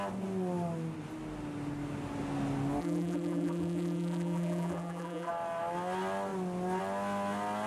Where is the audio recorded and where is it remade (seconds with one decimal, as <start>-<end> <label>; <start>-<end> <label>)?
0.0-2.8 recorded; 2.8-5.3 remade; 5.3-7.7 recorded